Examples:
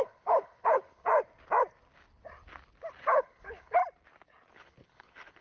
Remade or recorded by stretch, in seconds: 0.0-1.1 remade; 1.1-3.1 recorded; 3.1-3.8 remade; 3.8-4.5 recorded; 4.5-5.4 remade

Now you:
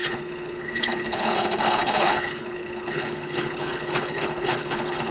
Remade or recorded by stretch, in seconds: 0.0-5.1 remade